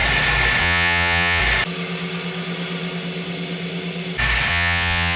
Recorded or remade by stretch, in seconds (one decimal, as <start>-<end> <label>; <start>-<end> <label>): 0.0-0.6 recorded; 0.6-1.4 remade; 1.4-4.5 recorded; 4.5-5.2 remade